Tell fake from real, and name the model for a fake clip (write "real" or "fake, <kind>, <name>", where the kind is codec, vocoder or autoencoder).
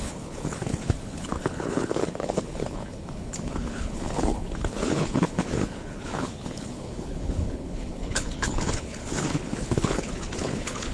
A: fake, codec, HILCodec